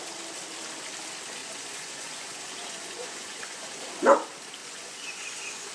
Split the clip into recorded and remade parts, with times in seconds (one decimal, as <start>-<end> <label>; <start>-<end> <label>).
0.0-1.4 recorded; 1.4-3.8 remade; 3.8-4.6 recorded; 4.6-5.7 remade